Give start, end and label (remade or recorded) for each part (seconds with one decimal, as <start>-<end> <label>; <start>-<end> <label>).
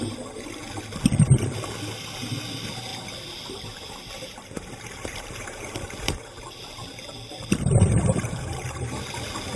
0.0-2.9 recorded; 2.9-6.2 remade; 6.2-9.6 recorded